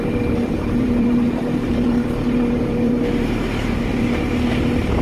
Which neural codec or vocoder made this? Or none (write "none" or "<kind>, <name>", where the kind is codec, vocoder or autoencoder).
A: vocoder, BigVGAN v2